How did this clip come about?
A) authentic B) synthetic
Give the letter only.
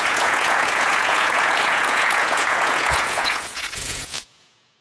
B